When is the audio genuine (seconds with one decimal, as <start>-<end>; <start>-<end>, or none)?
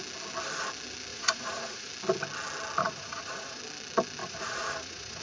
0.0-1.1; 1.9-2.8; 3.6-4.2